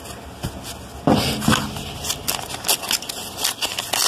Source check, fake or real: real